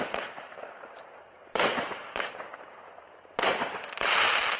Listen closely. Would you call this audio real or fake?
fake